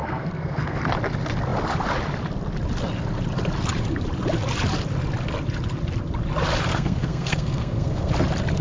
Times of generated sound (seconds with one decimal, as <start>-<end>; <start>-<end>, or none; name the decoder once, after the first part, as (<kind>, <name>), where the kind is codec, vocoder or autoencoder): 0.0-0.8 (codec, SNAC); 6.7-8.1